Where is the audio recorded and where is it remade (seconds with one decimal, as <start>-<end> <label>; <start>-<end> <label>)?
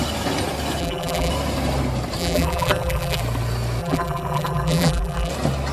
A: 0.0-0.8 recorded; 0.8-1.3 remade; 1.3-2.2 recorded; 2.2-3.2 remade; 3.2-3.8 recorded; 3.8-5.3 remade; 5.3-5.7 recorded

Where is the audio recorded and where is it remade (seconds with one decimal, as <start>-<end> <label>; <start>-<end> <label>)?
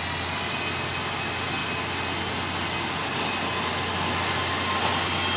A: 0.0-5.4 recorded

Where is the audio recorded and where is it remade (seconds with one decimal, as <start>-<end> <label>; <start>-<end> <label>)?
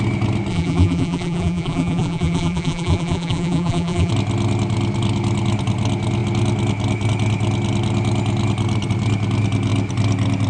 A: 0.0-0.5 recorded; 0.5-4.1 remade; 4.1-10.5 recorded